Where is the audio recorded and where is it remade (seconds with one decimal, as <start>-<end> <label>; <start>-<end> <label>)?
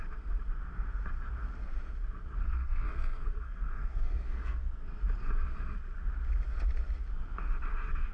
0.0-2.4 recorded; 2.4-5.0 remade; 5.0-8.1 recorded